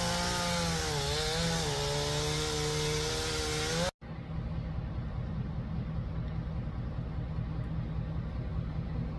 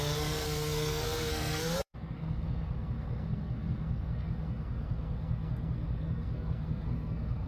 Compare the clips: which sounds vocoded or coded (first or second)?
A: second